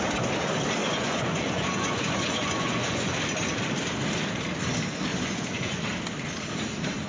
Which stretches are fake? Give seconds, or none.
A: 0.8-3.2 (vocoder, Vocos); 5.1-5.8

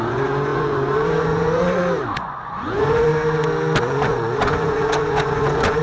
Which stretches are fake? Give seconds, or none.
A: 0.0-3.1 (vocoder, Vocos); 3.8-5.8

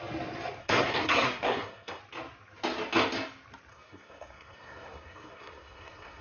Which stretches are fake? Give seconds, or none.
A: 0.6-2.0 (codec, SNAC); 3.7-6.2

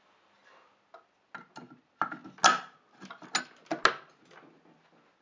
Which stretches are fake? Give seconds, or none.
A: none

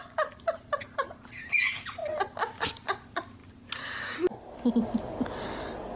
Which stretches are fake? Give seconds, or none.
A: none

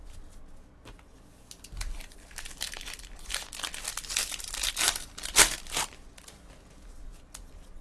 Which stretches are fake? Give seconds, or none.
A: none

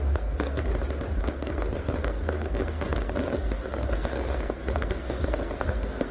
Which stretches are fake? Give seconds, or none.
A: 0.0-0.7 (codec, SNAC); 1.2-6.1

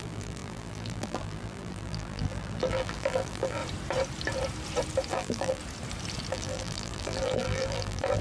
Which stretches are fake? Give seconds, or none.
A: 0.0-3.6 (vocoder, BigVGAN v2); 5.1-5.6; 6.3-8.2